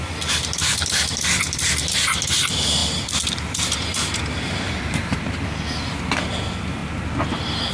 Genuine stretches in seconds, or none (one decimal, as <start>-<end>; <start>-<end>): 6.8-7.7